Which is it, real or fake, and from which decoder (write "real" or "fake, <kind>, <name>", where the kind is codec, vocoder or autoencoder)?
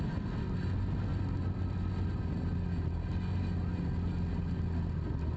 real